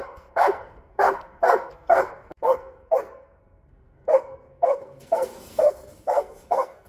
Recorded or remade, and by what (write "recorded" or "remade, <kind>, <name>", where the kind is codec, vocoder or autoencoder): remade, codec, SNAC